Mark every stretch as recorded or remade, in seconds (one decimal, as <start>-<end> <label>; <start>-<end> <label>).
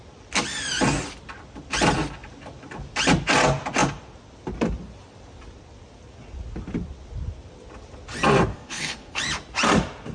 0.0-8.5 recorded; 8.5-9.2 remade; 9.2-10.1 recorded